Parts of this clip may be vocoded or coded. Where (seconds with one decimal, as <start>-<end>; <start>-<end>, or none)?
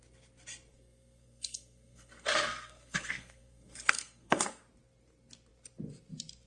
0.7-4.6